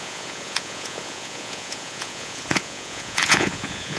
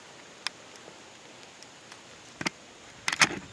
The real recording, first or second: second